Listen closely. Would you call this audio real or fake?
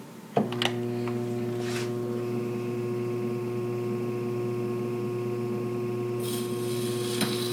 real